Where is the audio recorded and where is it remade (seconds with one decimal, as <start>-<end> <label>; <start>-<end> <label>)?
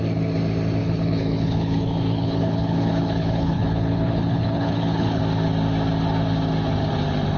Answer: 0.0-0.8 recorded; 0.8-5.2 remade; 5.2-7.4 recorded